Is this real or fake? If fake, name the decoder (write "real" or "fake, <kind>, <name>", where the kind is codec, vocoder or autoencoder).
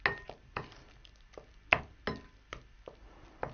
real